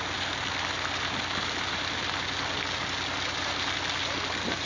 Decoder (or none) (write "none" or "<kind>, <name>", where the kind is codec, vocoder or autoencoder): none